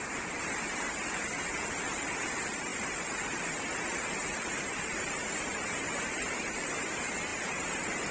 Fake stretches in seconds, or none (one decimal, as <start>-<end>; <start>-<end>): 2.7-6.8; 7.3-8.1